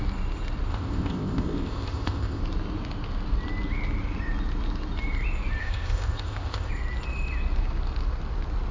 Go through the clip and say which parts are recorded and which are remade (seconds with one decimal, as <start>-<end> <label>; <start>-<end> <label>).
0.0-0.7 recorded; 0.7-2.4 remade; 2.4-5.6 recorded; 5.6-6.7 remade; 6.7-8.7 recorded